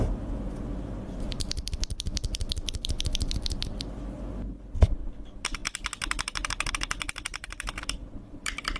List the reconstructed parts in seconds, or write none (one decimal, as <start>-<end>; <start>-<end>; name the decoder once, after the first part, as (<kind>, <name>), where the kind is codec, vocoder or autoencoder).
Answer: none